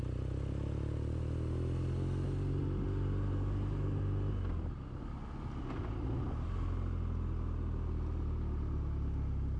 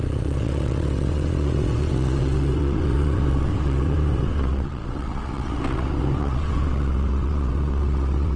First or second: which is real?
first